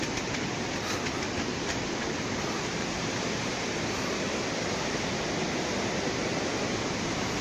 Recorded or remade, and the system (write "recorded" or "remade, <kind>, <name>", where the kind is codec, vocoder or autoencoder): recorded